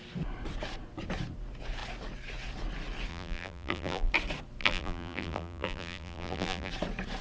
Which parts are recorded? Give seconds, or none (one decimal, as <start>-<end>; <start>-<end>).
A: 0.0-3.1; 4.1-4.6; 6.7-7.2